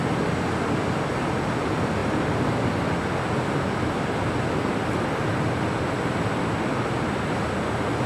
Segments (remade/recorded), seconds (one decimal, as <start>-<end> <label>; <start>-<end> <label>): 0.0-2.0 recorded; 2.0-2.9 remade; 2.9-8.1 recorded